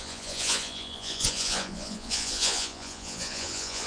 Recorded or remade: remade